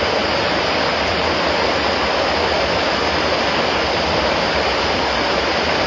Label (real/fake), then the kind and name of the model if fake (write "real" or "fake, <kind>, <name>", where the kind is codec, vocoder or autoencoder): real